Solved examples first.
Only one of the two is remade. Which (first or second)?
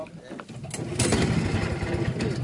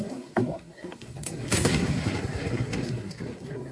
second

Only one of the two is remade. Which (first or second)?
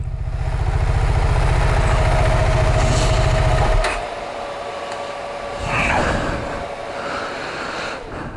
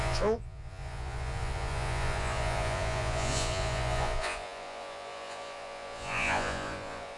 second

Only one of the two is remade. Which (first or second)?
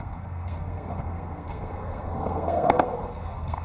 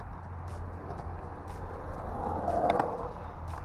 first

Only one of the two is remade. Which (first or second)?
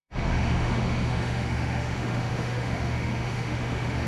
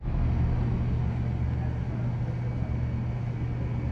first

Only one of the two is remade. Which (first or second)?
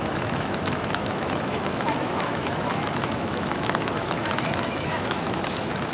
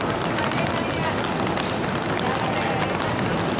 first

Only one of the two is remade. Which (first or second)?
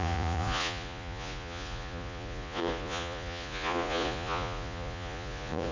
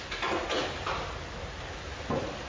first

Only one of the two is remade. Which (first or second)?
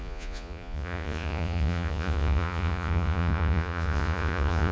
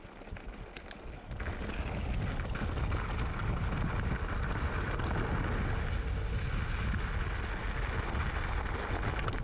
first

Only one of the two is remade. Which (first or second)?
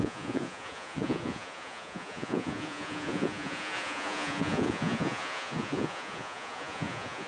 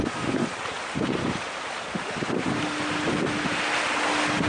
first